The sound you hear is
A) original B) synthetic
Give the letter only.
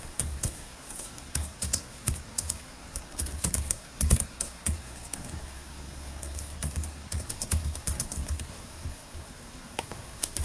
B